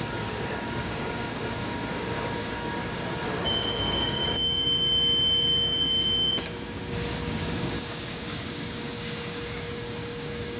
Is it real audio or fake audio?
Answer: fake